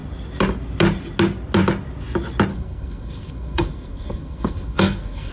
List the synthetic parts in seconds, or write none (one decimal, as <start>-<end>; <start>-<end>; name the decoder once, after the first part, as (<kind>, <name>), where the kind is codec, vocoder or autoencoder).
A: 2.5-5.3 (codec, SNAC)